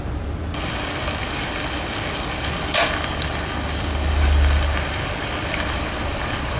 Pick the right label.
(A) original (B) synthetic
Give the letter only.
A